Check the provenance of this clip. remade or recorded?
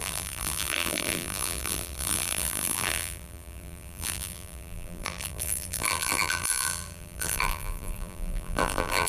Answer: remade